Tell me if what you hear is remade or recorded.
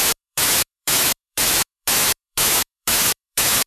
remade